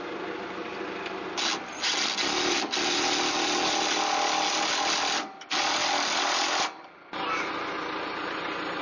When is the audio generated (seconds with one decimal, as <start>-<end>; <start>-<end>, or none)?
none